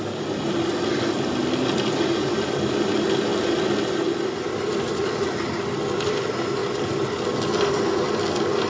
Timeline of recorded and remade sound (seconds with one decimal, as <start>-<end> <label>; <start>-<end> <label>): 0.0-8.7 recorded